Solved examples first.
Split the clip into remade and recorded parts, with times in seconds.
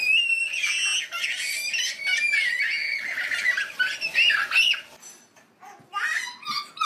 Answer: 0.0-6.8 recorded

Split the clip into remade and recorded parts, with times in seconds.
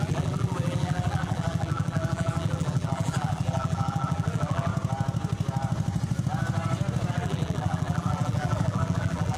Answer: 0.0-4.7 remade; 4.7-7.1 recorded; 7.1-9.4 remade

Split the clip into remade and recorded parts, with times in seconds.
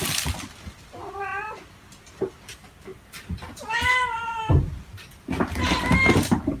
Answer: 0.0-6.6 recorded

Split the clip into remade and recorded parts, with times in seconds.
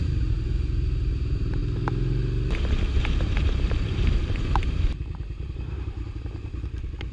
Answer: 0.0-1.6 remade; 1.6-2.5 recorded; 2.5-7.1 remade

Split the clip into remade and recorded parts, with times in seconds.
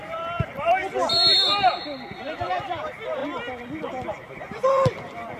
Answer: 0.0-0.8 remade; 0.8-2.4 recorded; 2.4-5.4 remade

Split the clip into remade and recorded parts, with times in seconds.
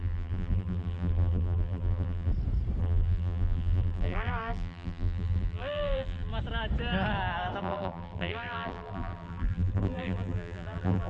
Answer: 0.0-2.3 remade; 2.3-2.8 recorded; 2.8-6.3 remade; 6.3-7.6 recorded; 7.6-11.1 remade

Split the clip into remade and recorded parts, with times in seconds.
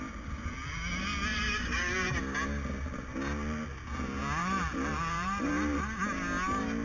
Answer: 0.0-1.3 recorded; 1.3-2.2 remade; 2.2-4.4 recorded; 4.4-5.5 remade; 5.5-6.8 recorded